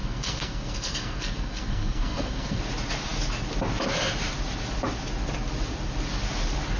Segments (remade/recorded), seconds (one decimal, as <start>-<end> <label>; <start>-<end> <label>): 0.0-2.6 remade; 2.6-6.8 recorded